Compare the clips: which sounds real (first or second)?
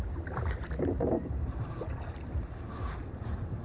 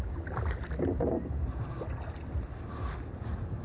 second